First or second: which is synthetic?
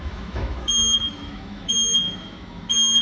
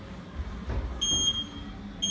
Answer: first